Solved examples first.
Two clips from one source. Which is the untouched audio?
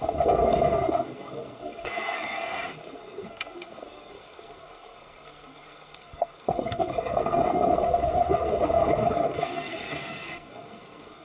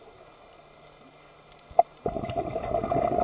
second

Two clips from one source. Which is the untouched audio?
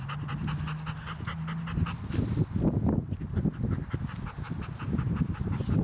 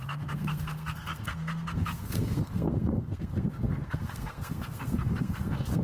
first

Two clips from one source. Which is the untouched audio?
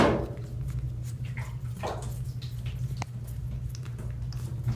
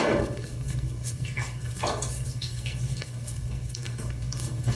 first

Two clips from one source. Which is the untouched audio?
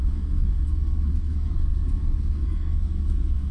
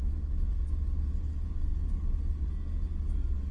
second